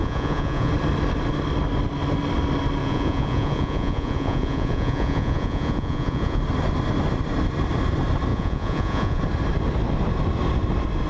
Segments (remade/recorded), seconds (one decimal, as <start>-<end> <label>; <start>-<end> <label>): 0.0-0.7 remade; 0.7-2.8 recorded; 2.8-6.4 remade; 6.4-8.3 recorded; 8.3-9.2 remade; 9.2-11.1 recorded